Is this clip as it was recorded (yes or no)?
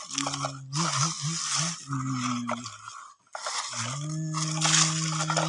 yes